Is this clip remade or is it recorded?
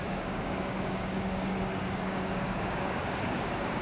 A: remade